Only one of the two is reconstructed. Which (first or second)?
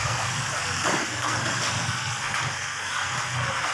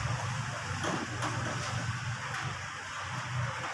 first